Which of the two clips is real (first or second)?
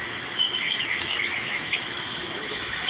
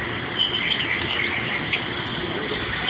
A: second